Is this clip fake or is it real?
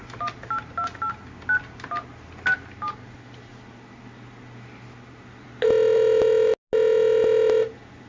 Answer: real